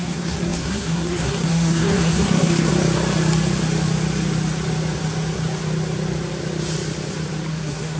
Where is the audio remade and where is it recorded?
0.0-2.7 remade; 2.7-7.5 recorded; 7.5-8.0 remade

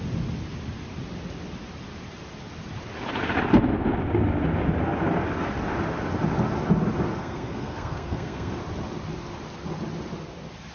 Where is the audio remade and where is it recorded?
0.0-7.2 recorded; 7.2-8.6 remade; 8.6-10.7 recorded

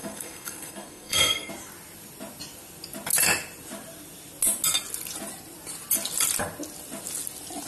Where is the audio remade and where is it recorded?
0.0-1.5 remade; 1.5-7.7 recorded

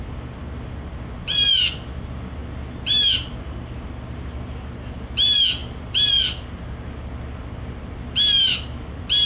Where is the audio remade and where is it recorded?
0.0-9.3 recorded

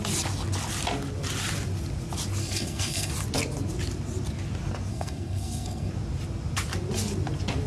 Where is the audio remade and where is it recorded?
0.0-2.4 recorded; 2.4-3.1 remade; 3.1-4.9 recorded; 4.9-5.9 remade; 5.9-7.7 recorded

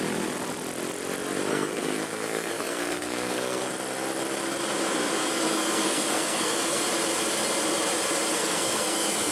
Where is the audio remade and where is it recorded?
0.0-1.5 recorded; 1.5-3.7 remade; 3.7-5.2 recorded; 5.2-6.8 remade; 6.8-8.3 recorded; 8.3-9.3 remade

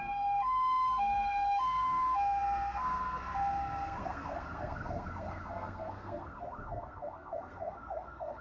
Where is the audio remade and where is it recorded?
0.0-8.4 remade

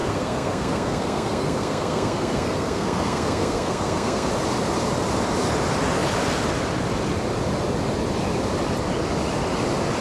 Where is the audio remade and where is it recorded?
0.0-4.3 remade; 4.3-10.0 recorded